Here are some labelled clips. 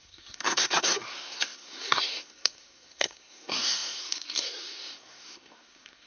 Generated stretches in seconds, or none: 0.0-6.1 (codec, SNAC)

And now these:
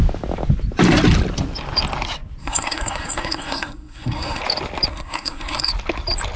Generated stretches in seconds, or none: 2.4-4.4 (codec, SNAC); 4.9-5.7

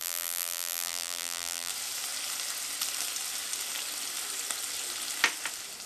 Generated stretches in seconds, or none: 0.0-1.7 (vocoder, BigVGAN v2)

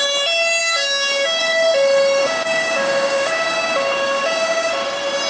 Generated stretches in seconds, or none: 0.6-1.4 (codec, DAC); 2.2-4.7

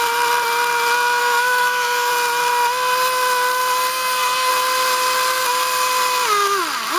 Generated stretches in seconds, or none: 1.2-2.1 (codec, SNAC); 3.9-4.5